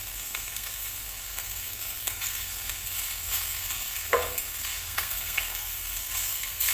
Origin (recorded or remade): remade